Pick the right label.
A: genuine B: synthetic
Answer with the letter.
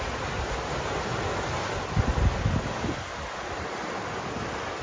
A